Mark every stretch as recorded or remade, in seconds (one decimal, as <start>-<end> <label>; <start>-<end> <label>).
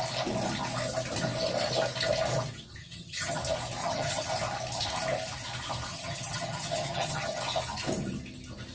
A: 0.0-2.8 recorded; 2.8-3.4 remade; 3.4-3.8 recorded; 3.8-4.3 remade; 4.3-5.9 recorded; 5.9-7.4 remade; 7.4-8.7 recorded